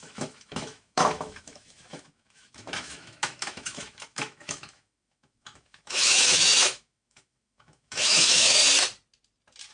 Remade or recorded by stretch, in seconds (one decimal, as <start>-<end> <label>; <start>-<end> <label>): 0.0-8.6 remade; 8.6-9.7 recorded